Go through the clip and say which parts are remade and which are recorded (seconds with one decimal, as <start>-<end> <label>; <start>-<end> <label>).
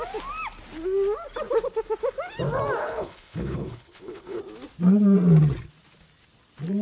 0.0-2.8 recorded; 2.8-4.4 remade; 4.4-6.8 recorded